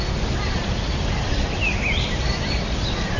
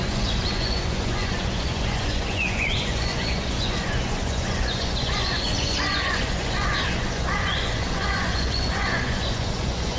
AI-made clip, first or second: second